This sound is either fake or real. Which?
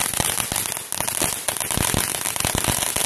real